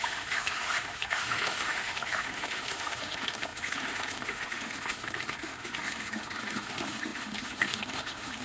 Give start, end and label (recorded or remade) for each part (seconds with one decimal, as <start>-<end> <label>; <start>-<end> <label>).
0.0-8.4 remade